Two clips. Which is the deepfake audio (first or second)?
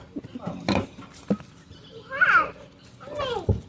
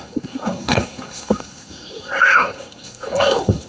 second